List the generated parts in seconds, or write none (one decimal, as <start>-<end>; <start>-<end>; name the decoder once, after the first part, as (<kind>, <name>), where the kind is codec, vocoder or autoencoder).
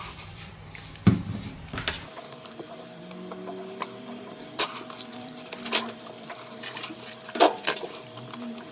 0.0-1.0 (vocoder, BigVGAN v2); 1.9-8.7